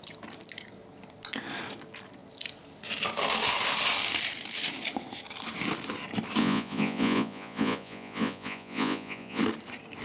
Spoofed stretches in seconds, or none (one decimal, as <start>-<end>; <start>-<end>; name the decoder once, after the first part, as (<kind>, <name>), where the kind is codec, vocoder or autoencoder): 6.4-9.4 (vocoder, Vocos)